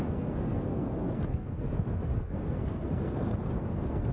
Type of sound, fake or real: fake